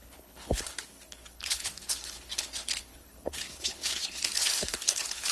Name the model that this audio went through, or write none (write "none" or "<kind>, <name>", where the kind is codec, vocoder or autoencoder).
codec, HILCodec